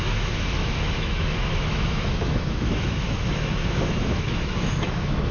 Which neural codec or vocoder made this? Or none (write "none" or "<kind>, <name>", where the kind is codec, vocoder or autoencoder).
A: autoencoder, DAC-VAE